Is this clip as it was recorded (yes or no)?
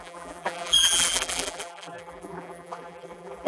no